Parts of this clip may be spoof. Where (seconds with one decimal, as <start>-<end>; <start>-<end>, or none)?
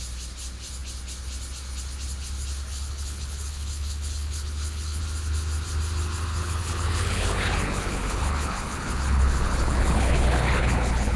2.7-5.0; 6.3-11.2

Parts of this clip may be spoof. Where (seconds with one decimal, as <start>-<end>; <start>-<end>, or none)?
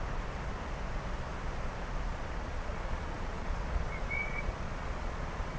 2.1-5.6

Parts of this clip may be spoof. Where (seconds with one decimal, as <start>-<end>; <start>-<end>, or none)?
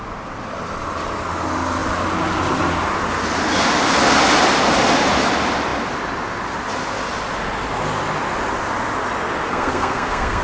9.5-10.4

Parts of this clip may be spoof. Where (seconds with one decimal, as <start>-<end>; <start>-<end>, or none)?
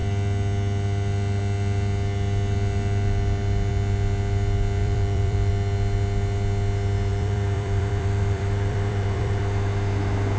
4.8-5.5; 7.1-9.4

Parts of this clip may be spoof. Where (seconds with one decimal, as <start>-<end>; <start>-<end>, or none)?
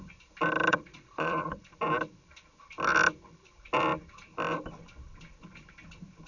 0.7-1.6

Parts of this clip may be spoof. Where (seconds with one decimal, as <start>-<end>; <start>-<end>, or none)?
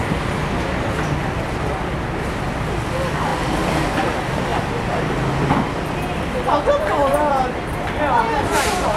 4.5-5.0; 7.1-7.8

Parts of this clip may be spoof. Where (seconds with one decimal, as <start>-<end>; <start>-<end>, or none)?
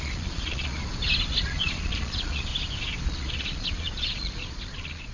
0.0-0.8; 1.4-2.5; 3.0-5.1